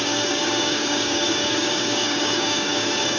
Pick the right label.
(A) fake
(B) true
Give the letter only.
A